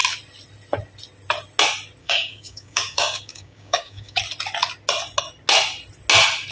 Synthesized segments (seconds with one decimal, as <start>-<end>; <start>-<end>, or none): 2.0-4.2